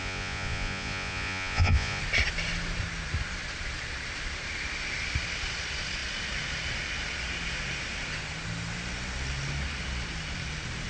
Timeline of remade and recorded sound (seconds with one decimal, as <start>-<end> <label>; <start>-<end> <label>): 0.0-2.0 remade; 2.0-10.9 recorded